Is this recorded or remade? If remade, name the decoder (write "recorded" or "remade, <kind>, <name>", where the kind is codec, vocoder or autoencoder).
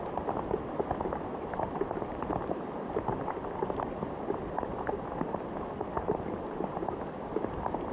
recorded